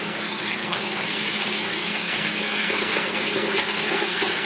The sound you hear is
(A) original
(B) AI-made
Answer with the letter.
B